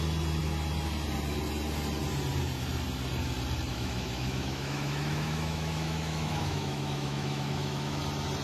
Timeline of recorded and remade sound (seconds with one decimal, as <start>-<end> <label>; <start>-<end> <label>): 0.0-3.7 recorded; 3.7-8.0 remade; 8.0-8.4 recorded